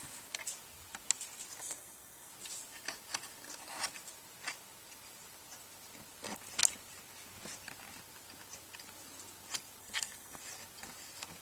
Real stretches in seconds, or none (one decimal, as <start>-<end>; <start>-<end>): 0.0-1.6; 2.3-9.8; 10.4-11.4